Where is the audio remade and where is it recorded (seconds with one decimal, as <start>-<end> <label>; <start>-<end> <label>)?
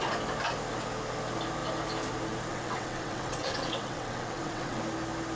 0.0-2.5 recorded; 2.5-4.8 remade; 4.8-5.4 recorded